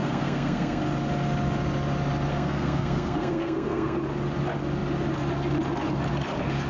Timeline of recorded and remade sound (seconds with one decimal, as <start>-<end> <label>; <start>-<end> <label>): 0.0-0.8 remade; 0.8-2.3 recorded; 2.3-4.0 remade; 4.0-6.7 recorded